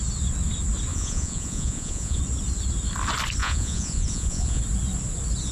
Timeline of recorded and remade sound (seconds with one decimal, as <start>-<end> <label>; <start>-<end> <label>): 0.0-0.9 recorded; 0.9-2.2 remade; 2.2-3.4 recorded; 3.4-4.6 remade; 4.6-5.5 recorded